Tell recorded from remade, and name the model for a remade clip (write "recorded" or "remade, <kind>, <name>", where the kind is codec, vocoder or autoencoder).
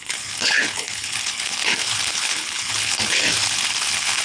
remade, codec, HILCodec